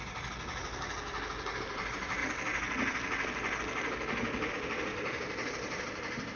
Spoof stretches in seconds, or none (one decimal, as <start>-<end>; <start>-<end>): 1.6-2.2; 4.5-6.4